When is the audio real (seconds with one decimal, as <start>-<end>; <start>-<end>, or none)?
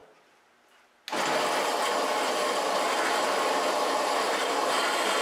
0.0-3.1; 4.6-5.2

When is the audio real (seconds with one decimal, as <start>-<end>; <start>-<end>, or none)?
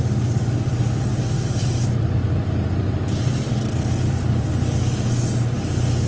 0.0-1.1; 4.5-6.1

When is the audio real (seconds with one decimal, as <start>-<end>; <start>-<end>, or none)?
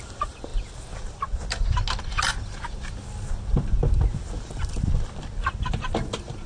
0.0-6.5